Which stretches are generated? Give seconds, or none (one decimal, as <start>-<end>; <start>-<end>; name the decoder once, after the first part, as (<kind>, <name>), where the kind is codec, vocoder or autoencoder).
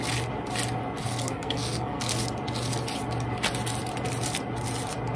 1.0-2.1 (codec, SNAC)